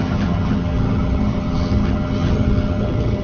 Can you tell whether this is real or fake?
fake